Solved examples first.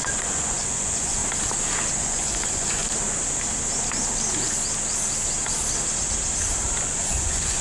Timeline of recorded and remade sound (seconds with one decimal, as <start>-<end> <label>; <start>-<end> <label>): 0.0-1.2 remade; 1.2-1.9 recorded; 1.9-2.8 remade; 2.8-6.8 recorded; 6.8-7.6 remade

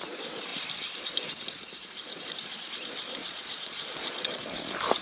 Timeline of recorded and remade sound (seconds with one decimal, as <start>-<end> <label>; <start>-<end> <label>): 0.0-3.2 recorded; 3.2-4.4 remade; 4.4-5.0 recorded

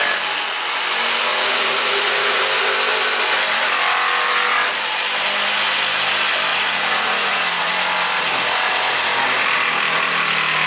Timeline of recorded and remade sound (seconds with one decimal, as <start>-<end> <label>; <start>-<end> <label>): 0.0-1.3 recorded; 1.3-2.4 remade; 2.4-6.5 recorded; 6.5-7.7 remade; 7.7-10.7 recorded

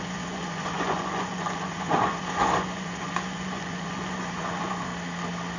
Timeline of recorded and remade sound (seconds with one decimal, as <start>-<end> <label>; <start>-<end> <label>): 0.0-4.9 remade; 4.9-5.6 recorded

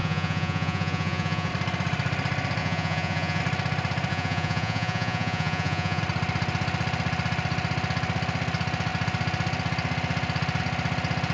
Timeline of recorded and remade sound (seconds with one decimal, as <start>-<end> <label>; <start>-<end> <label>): 0.0-1.5 remade; 1.5-2.6 recorded; 2.6-3.4 remade; 3.4-4.1 recorded; 4.1-6.0 remade; 6.0-11.3 recorded

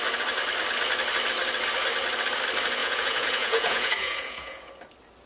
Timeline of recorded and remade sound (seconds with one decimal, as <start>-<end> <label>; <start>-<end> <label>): 0.0-2.8 recorded; 2.8-4.7 remade; 4.7-5.3 recorded

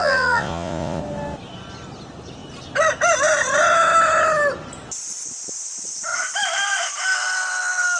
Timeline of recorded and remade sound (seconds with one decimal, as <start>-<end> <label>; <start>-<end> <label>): 0.0-1.0 remade; 1.0-8.0 recorded